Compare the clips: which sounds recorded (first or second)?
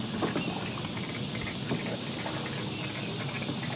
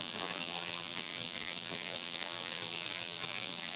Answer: first